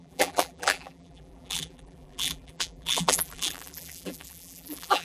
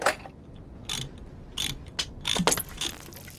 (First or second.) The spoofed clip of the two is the first